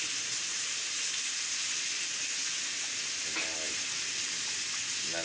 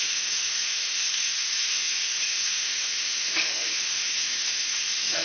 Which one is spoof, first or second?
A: second